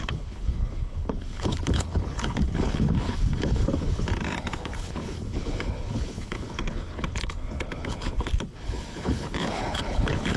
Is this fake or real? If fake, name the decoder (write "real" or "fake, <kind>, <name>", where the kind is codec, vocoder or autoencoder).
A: fake, codec, HILCodec